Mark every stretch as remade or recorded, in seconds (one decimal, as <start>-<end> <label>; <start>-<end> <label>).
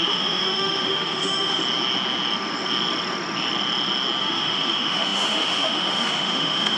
0.0-1.6 remade; 1.6-4.2 recorded; 4.2-6.8 remade